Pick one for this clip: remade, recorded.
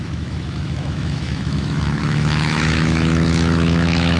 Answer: remade